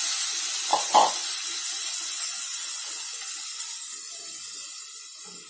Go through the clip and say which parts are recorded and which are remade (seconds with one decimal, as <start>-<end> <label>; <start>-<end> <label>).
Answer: 0.0-4.6 remade; 4.6-5.5 recorded